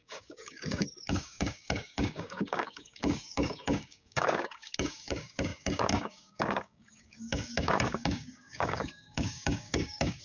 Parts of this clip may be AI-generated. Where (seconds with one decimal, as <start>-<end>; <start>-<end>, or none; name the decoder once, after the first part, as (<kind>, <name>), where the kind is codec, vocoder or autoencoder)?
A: 0.0-10.2 (codec, DAC)